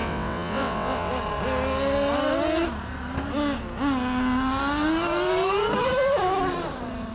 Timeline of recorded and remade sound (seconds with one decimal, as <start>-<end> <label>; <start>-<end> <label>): 0.0-1.1 remade; 1.1-7.1 recorded

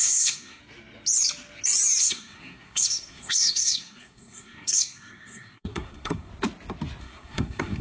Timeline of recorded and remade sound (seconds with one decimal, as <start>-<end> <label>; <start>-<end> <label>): 0.0-0.6 remade; 0.6-2.0 recorded; 2.0-6.3 remade; 6.3-7.0 recorded; 7.0-7.8 remade

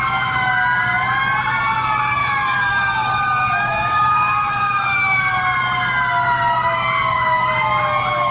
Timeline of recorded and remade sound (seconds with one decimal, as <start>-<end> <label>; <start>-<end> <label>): 0.0-2.2 recorded; 2.2-5.2 remade; 5.2-8.3 recorded

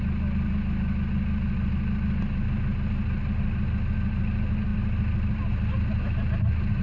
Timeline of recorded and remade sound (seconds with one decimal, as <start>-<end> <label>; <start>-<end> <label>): 0.0-6.8 recorded

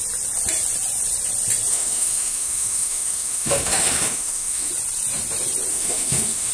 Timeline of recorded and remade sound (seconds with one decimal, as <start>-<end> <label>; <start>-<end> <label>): 0.0-1.7 recorded; 1.7-4.7 remade; 4.7-5.7 recorded; 5.7-6.5 remade